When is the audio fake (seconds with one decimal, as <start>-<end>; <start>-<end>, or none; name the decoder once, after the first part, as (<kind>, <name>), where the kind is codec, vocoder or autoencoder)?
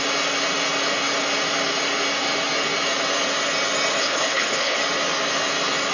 4.0-4.8 (codec, HILCodec)